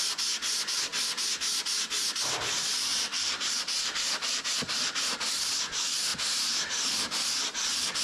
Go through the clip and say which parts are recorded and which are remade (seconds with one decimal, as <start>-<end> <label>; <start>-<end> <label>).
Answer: 0.0-2.9 recorded; 2.9-5.6 remade; 5.6-8.0 recorded